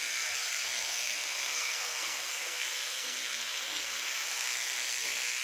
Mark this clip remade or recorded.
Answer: remade